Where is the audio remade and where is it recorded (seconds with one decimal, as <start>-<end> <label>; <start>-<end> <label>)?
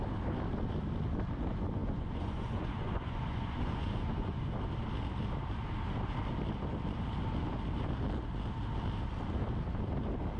0.0-1.8 recorded; 1.8-4.4 remade; 4.4-10.4 recorded